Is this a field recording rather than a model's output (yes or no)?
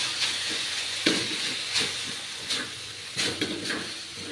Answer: no